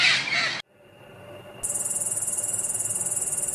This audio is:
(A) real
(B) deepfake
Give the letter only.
A